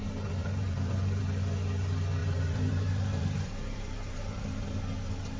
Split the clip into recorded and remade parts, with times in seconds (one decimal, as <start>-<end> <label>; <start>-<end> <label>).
0.0-0.4 recorded; 0.4-1.2 remade; 1.2-2.2 recorded; 2.2-4.4 remade; 4.4-5.4 recorded